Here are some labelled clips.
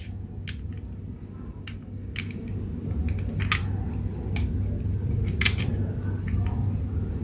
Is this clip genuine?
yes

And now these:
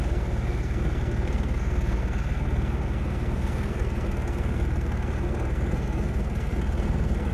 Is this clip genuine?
no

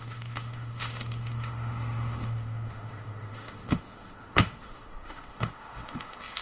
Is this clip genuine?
no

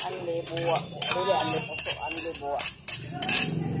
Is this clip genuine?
yes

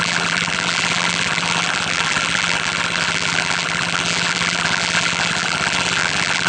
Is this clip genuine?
no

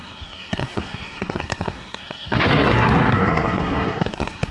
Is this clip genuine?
no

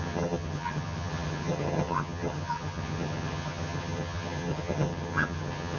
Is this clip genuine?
no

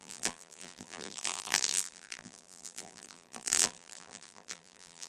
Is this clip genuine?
no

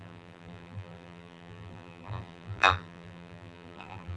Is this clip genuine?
no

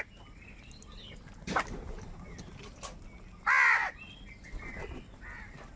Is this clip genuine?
yes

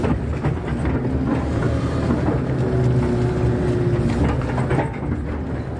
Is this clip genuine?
yes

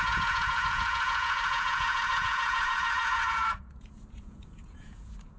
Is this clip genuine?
no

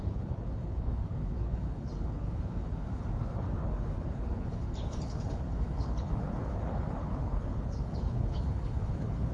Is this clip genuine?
no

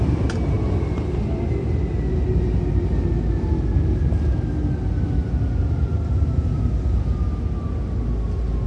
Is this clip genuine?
yes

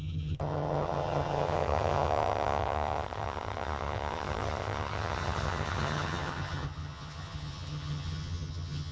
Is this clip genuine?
no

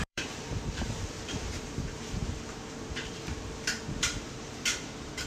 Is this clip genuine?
no